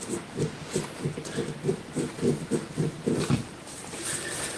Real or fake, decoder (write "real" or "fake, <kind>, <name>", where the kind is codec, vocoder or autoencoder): real